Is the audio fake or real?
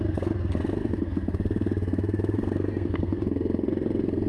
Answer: fake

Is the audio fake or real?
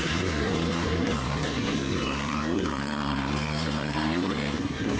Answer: fake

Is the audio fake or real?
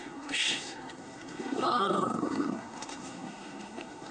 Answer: fake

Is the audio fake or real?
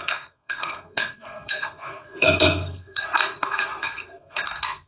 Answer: fake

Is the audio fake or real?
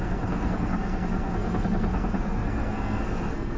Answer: fake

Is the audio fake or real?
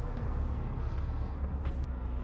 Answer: fake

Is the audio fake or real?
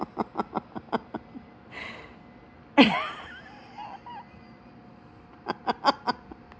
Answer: real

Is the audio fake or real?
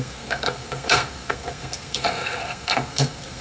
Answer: fake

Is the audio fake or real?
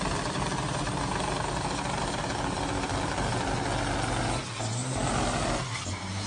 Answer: real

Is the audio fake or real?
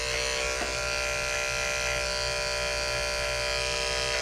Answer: real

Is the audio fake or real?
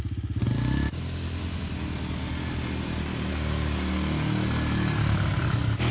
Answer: real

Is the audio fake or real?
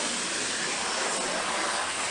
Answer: real